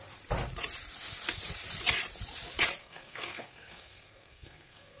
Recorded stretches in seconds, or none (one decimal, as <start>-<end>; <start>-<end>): 0.0-2.8